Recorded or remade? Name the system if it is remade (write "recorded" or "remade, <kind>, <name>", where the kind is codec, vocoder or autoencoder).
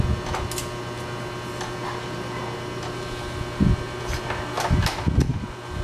recorded